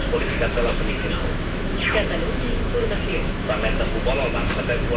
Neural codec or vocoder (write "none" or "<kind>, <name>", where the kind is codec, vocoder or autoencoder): autoencoder, DAC-VAE